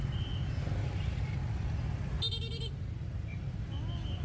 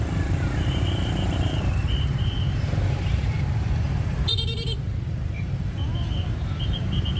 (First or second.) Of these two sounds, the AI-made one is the second